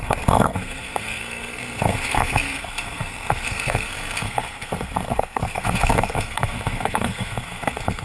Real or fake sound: fake